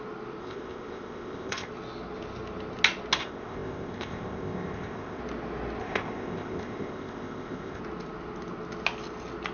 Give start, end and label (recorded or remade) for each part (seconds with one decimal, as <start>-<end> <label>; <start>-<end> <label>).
0.0-0.4 recorded; 0.4-1.7 remade; 1.7-3.2 recorded; 3.2-5.2 remade; 5.2-5.8 recorded; 5.8-7.8 remade; 7.8-9.5 recorded